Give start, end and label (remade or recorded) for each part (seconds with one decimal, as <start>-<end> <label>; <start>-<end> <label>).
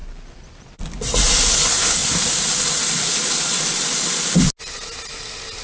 0.0-0.9 remade; 0.9-2.0 recorded; 2.0-3.1 remade; 3.1-5.6 recorded